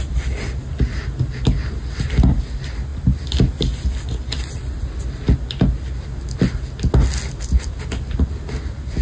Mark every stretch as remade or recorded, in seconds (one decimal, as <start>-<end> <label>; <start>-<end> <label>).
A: 0.0-9.0 recorded

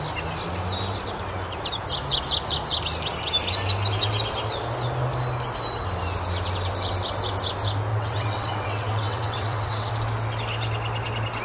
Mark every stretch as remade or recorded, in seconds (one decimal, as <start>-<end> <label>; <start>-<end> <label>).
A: 0.0-7.9 recorded; 7.9-9.9 remade; 9.9-11.4 recorded